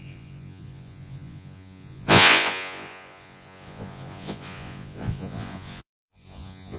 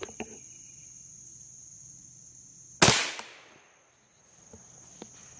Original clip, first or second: second